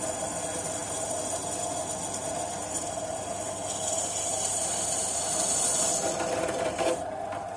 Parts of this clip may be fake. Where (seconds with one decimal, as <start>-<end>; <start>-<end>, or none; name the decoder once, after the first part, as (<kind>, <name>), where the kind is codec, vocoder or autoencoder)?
none